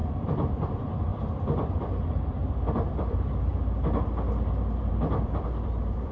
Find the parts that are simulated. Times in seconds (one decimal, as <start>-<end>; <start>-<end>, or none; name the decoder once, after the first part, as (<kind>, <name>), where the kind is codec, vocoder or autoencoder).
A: 0.0-3.5 (vocoder, BigVGAN v2); 4.9-6.1

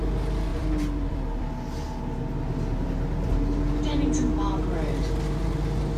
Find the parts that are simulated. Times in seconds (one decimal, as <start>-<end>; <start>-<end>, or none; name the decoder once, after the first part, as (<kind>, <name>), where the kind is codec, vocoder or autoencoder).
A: 0.5-1.5 (vocoder, BigVGAN v2)

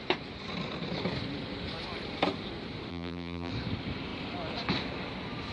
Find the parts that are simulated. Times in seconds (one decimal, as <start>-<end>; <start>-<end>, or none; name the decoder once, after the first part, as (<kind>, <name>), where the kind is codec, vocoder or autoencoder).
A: 2.9-3.5 (vocoder, BigVGAN v2)

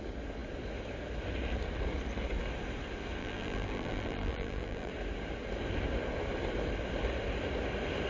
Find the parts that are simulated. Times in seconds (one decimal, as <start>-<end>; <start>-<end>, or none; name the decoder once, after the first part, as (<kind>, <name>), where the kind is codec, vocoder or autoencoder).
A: 3.2-4.9 (vocoder, BigVGAN v2)